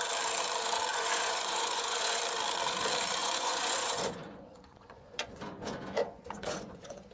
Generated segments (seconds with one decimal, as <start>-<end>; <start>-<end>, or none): 0.9-2.2; 3.2-7.1